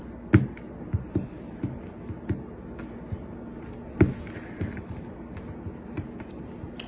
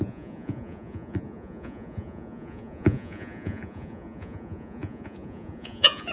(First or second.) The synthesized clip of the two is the second